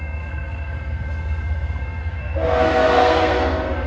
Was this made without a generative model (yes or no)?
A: no